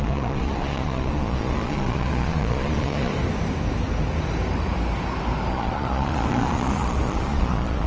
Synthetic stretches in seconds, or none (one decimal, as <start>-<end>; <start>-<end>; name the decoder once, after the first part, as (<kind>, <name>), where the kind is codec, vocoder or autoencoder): 0.0-3.1 (vocoder, Vocos); 5.5-7.9